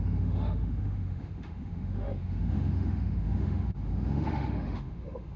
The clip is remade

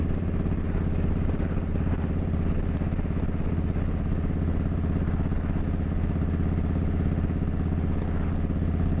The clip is recorded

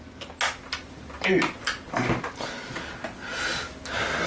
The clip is recorded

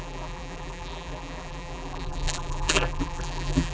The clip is remade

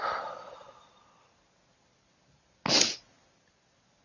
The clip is recorded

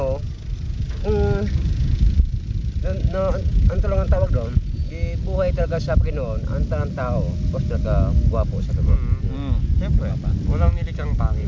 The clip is recorded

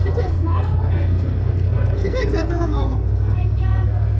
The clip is remade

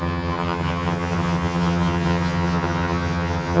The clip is remade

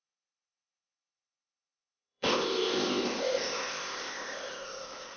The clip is remade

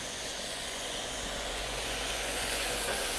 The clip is remade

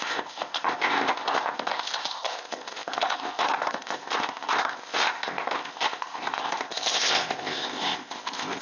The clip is remade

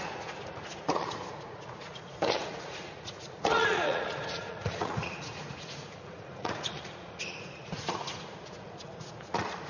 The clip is remade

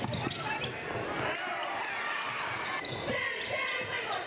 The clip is recorded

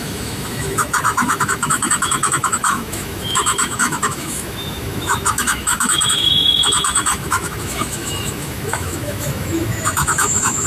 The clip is remade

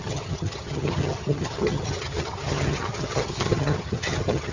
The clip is remade